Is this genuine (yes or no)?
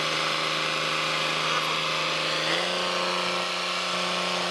yes